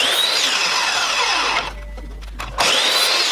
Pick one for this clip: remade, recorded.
recorded